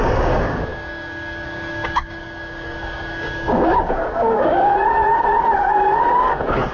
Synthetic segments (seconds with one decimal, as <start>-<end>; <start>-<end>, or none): 0.0-4.7; 6.2-6.7